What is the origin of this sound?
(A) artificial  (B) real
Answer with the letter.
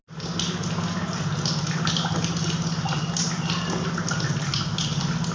B